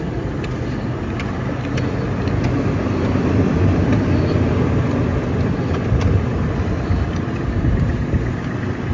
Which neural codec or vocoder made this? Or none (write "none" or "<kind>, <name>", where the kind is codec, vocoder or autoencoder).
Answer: none